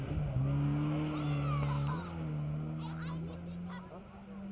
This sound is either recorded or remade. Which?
recorded